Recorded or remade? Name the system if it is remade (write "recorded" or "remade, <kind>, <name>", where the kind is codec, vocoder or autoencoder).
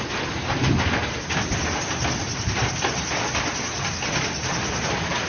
recorded